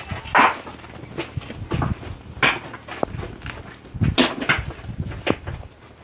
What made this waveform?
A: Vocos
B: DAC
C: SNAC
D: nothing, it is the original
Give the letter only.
D